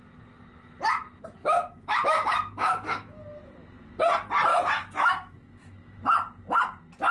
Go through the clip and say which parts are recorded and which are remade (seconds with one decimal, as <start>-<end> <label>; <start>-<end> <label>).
0.0-1.4 recorded; 1.4-3.2 remade; 3.2-4.5 recorded; 4.5-6.0 remade; 6.0-7.1 recorded